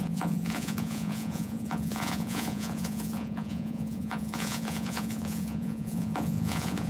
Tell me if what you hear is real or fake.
fake